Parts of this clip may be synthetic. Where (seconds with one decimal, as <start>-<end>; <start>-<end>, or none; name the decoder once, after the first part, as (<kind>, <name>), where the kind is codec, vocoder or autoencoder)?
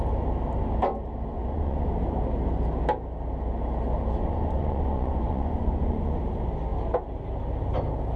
1.3-1.9 (vocoder, Vocos); 4.2-6.2